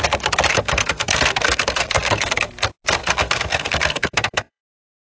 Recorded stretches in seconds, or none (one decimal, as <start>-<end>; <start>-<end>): 0.0-0.5; 2.5-3.0; 4.6-5.0